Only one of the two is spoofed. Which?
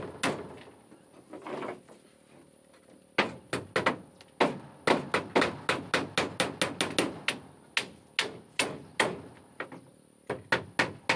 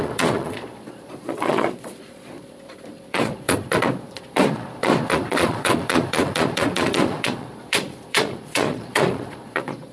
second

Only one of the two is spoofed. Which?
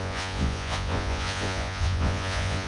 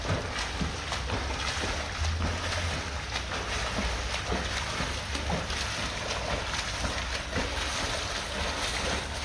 first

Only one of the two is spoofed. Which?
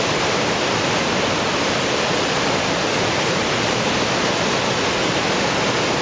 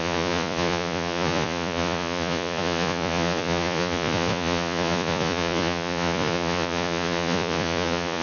second